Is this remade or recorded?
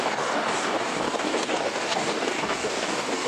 remade